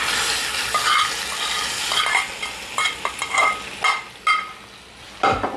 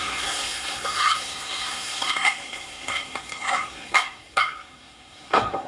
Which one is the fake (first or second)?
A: second